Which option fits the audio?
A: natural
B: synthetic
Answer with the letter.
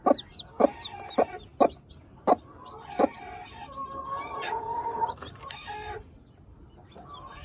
A